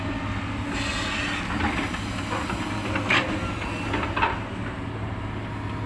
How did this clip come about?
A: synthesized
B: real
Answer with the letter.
B